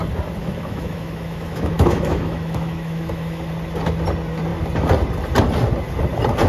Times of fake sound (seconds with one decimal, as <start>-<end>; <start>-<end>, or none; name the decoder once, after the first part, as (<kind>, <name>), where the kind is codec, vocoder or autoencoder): 0.4-3.5 (autoencoder, DAC-VAE)